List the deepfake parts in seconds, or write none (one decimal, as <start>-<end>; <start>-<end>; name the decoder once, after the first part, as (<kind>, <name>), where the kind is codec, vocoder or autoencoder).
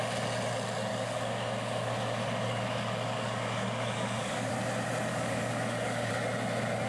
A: 0.9-4.5 (codec, DAC); 5.1-6.1